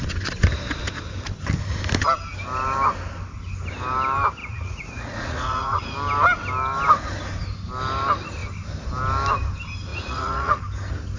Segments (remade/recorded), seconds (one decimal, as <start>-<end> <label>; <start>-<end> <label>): 0.0-4.4 recorded; 4.4-5.8 remade; 5.8-9.9 recorded; 9.9-10.6 remade; 10.6-11.2 recorded

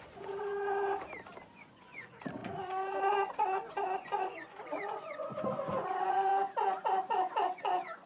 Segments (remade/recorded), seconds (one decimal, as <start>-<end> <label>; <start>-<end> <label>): 0.0-0.5 remade; 0.5-1.5 recorded; 1.5-6.3 remade; 6.3-7.6 recorded; 7.6-8.1 remade

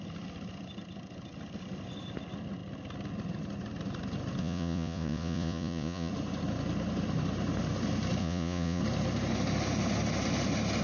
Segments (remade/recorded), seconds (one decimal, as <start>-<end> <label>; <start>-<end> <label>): 0.0-4.4 recorded; 4.4-6.1 remade; 6.1-8.2 recorded; 8.2-8.8 remade; 8.8-10.8 recorded

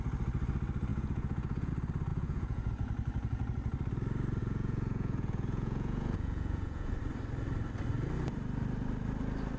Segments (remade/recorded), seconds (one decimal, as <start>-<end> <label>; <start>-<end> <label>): 0.0-0.9 recorded; 0.9-1.7 remade; 1.7-2.1 recorded; 2.1-2.7 remade; 2.7-4.4 recorded; 4.4-6.9 remade; 6.9-9.6 recorded

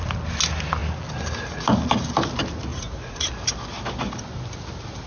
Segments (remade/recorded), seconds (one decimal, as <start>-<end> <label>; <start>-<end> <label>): 0.0-2.7 recorded; 2.7-3.3 remade; 3.3-5.1 recorded

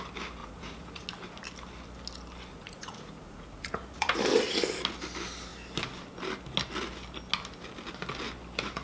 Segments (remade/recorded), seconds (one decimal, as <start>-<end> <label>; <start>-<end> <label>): 0.0-0.4 recorded; 0.4-1.1 remade; 1.1-2.5 recorded; 2.5-4.2 remade; 4.2-8.8 recorded